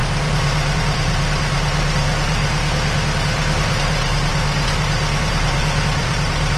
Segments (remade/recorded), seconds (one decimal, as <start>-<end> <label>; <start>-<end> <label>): 0.0-2.4 remade; 2.4-3.2 recorded; 3.2-6.6 remade